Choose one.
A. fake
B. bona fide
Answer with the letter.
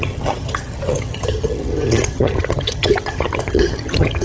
A